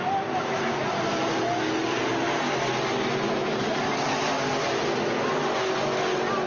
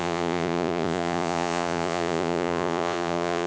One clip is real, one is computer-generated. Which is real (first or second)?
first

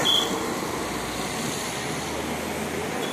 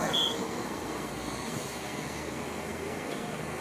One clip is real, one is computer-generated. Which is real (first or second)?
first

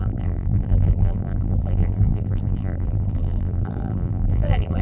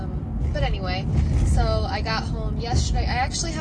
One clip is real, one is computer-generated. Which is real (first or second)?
second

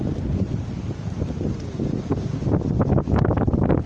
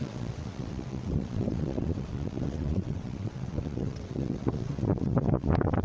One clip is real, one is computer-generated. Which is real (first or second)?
first